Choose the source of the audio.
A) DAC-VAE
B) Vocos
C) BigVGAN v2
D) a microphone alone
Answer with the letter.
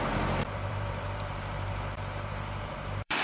C